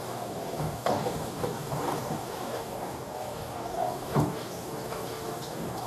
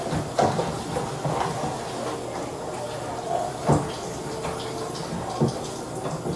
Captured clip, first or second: second